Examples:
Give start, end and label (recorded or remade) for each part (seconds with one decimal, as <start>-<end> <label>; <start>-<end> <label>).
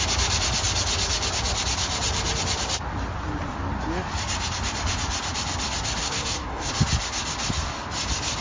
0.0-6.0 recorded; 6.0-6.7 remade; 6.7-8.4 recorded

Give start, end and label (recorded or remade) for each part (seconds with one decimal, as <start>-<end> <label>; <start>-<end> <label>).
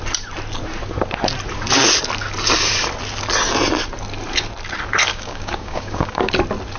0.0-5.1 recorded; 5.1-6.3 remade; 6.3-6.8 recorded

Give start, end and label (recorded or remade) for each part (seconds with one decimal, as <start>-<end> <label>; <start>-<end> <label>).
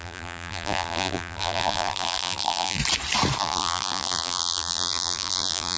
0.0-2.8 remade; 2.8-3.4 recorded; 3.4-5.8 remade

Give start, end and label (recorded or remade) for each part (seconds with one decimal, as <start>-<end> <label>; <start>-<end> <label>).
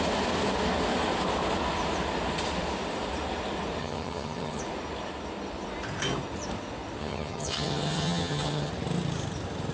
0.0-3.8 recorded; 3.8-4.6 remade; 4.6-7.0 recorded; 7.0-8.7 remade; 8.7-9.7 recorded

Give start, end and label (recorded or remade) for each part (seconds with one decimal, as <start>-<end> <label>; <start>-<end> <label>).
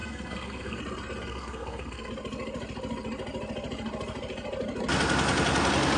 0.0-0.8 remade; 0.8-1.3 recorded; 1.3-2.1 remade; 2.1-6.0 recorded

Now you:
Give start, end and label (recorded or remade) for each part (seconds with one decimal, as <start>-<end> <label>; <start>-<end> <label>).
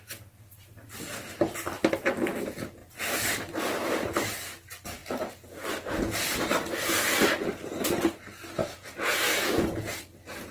0.0-8.6 recorded; 8.6-9.8 remade; 9.8-10.5 recorded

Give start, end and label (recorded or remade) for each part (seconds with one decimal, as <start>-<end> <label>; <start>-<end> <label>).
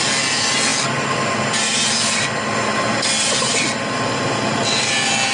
0.0-5.3 recorded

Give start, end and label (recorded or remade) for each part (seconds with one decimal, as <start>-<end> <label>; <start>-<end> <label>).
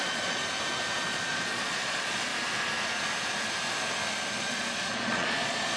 0.0-0.4 remade; 0.4-1.1 recorded; 1.1-2.3 remade; 2.3-4.4 recorded; 4.4-5.8 remade